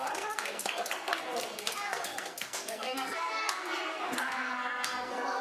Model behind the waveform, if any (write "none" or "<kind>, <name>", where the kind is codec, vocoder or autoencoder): codec, SNAC